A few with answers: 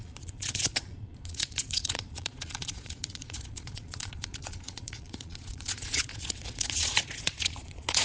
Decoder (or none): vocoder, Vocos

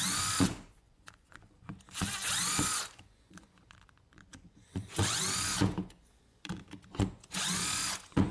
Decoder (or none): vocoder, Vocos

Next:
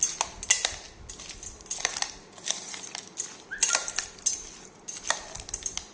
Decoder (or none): none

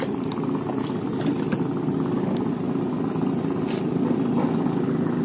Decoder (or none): none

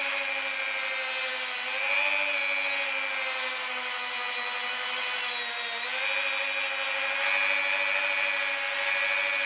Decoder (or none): none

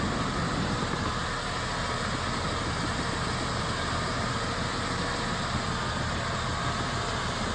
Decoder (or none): none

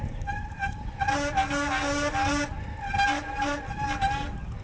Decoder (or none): none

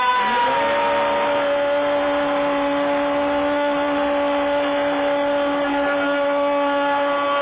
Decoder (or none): none